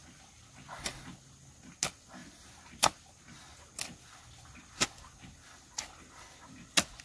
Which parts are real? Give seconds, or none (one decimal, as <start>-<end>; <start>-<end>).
0.0-7.0